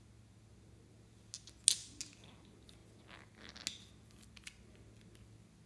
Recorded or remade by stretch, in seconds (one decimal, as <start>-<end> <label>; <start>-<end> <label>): 0.0-5.7 recorded